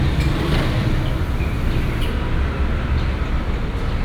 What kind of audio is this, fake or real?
real